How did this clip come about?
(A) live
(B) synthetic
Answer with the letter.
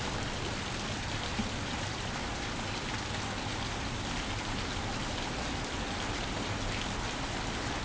A